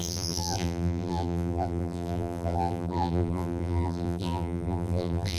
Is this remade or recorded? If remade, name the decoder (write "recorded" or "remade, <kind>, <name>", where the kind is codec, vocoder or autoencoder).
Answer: remade, vocoder, BigVGAN v2